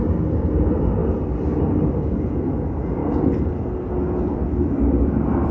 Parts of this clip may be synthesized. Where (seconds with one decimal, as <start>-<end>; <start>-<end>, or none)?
3.0-3.5; 4.0-5.1